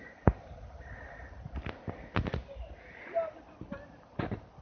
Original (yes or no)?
yes